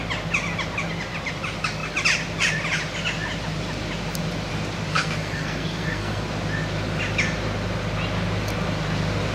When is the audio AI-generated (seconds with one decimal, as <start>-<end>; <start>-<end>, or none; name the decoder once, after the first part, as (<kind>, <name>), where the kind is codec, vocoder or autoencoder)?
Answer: 4.9-6.2 (codec, SNAC)